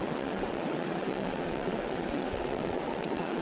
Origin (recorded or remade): remade